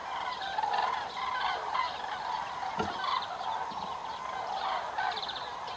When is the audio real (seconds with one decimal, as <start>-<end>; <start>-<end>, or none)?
0.0-5.8